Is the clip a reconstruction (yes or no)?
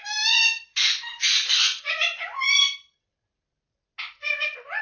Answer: no